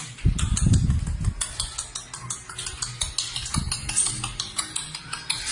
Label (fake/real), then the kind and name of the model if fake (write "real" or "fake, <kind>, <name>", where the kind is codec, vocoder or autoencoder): real